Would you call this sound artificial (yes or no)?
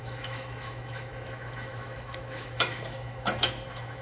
yes